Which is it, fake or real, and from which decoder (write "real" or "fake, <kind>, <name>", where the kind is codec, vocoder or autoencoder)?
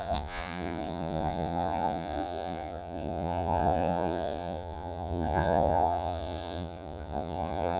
fake, vocoder, Vocos